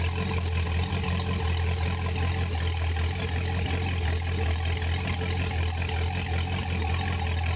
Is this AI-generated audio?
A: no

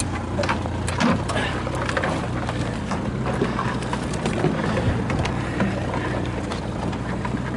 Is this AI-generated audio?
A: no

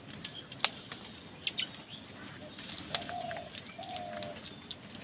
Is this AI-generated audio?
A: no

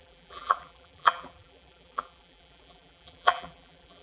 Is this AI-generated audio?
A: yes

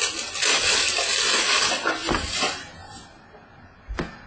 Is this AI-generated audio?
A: no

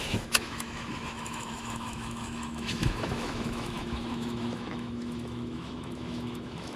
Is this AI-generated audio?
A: yes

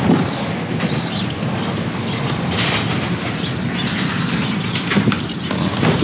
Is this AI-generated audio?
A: no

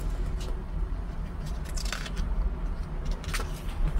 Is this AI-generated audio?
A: no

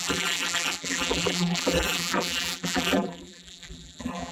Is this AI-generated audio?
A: yes